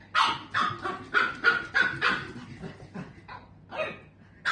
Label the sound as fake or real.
real